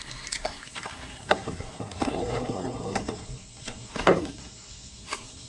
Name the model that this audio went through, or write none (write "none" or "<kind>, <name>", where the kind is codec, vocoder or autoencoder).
codec, SNAC